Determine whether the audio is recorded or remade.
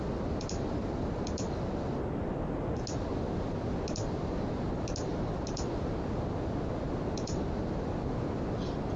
recorded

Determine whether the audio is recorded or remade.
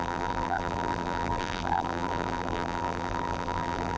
remade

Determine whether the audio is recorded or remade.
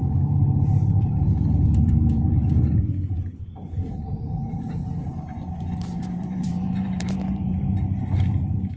remade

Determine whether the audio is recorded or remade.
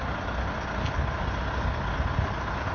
recorded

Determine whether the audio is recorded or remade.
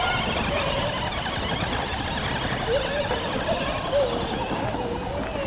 recorded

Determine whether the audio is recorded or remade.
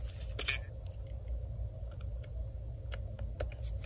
recorded